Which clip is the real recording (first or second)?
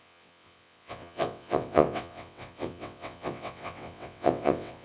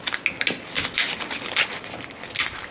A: second